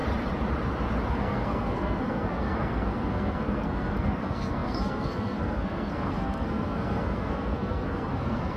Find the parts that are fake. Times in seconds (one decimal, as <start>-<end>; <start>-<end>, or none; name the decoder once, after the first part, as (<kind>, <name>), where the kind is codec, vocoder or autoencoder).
1.1-8.6 (codec, SNAC)